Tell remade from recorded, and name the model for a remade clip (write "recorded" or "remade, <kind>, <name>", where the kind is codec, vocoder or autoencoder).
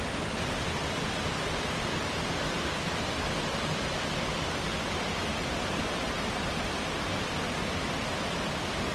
recorded